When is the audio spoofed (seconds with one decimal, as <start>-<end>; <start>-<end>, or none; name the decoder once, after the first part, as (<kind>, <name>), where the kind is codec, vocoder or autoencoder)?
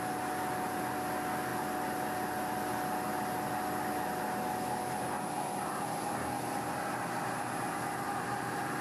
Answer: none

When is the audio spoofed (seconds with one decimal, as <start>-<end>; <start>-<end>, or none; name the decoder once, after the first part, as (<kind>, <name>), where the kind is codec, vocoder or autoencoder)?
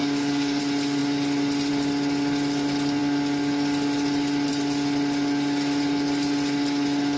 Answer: 0.0-0.6 (codec, DAC)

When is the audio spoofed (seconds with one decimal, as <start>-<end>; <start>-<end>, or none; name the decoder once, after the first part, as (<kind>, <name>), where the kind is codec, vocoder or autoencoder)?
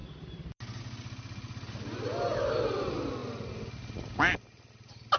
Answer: none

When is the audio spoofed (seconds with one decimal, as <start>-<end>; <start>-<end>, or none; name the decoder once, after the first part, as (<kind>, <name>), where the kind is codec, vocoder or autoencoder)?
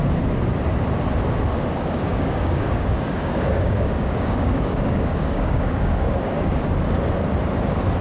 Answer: 2.1-6.9 (codec, DAC)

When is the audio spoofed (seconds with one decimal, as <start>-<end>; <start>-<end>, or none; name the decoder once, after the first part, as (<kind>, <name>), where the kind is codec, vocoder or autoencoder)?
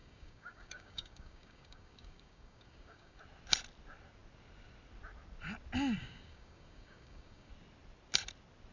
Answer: 0.0-3.2 (codec, DAC); 6.0-7.5